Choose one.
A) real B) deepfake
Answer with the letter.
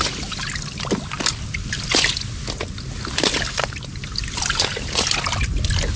A